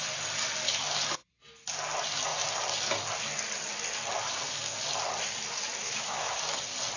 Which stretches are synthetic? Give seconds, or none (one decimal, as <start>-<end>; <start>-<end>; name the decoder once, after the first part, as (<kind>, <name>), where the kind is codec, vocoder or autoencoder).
5.8-6.4 (autoencoder, DAC-VAE)